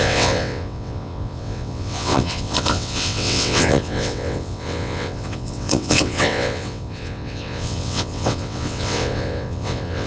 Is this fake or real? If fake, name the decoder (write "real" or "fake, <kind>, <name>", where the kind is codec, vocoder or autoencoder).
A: fake, vocoder, WaveNeXt